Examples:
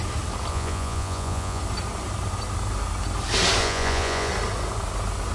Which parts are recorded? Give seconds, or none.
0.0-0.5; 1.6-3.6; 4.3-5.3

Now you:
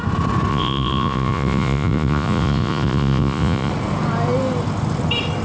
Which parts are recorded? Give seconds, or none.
0.0-0.5; 3.7-5.4